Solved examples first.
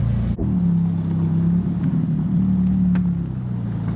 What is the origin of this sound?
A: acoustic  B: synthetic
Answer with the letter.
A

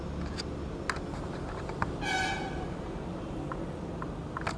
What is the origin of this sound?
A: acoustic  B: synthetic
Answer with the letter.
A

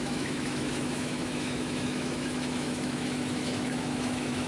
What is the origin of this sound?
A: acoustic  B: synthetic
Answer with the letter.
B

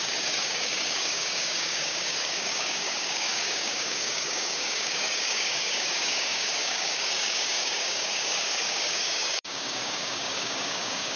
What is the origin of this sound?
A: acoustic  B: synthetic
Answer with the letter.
B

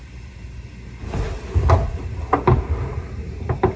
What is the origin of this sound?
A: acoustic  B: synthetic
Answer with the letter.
A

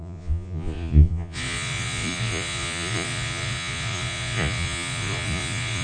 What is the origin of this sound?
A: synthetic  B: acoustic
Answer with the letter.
A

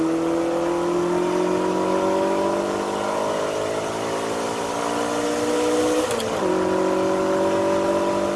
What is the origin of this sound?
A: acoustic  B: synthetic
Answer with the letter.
A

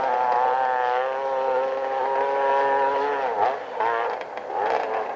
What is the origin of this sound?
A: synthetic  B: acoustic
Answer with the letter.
B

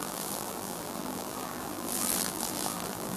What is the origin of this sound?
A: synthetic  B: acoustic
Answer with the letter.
A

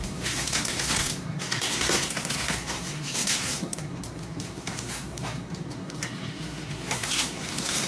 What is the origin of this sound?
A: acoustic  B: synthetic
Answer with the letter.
B